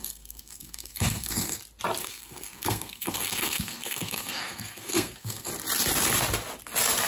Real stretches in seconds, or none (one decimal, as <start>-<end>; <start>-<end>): 1.6-2.0; 5.5-7.1